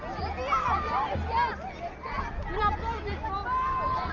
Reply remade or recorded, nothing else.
recorded